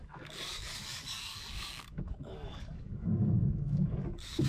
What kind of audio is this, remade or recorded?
remade